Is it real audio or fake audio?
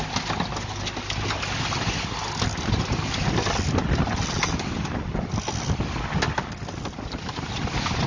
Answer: real